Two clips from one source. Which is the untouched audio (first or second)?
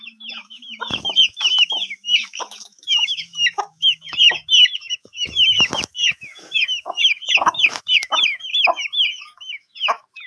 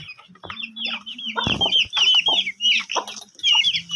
second